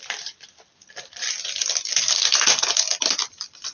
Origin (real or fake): fake